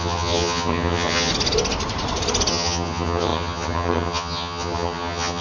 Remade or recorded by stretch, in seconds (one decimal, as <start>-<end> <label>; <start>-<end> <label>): 0.0-1.3 remade; 1.3-2.5 recorded; 2.5-5.4 remade